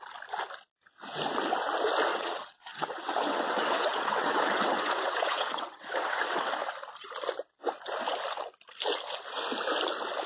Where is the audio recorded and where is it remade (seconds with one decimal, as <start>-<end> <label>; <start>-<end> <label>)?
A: 0.0-2.1 recorded; 2.1-6.5 remade; 6.5-10.3 recorded

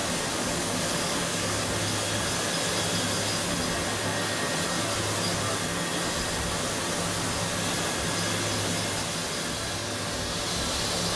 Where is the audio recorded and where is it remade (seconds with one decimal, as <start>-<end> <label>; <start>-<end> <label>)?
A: 0.0-1.7 remade; 1.7-11.2 recorded

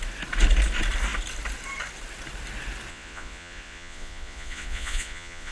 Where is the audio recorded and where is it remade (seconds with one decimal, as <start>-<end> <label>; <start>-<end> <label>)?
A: 0.0-2.9 recorded; 2.9-5.5 remade

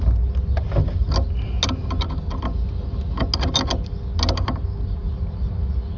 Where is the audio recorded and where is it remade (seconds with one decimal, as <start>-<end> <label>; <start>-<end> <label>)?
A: 0.0-6.0 recorded

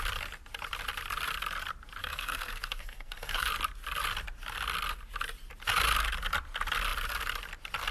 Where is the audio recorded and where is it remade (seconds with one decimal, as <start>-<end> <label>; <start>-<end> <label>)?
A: 0.0-2.0 recorded; 2.0-3.5 remade; 3.5-7.9 recorded